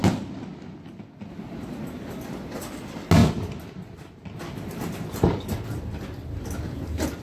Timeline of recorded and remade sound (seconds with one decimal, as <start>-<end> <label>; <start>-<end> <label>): 0.0-7.2 recorded